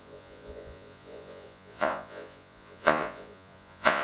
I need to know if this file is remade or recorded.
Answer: remade